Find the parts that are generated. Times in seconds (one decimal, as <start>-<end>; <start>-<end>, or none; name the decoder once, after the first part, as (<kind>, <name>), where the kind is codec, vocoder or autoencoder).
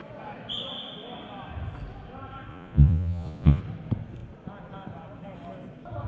2.5-3.6 (vocoder, Vocos)